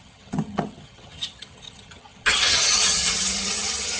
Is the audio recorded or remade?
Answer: remade